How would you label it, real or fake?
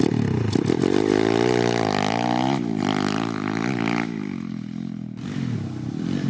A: real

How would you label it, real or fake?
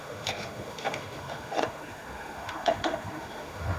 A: fake